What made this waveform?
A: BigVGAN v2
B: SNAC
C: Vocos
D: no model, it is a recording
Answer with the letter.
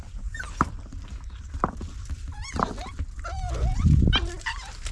D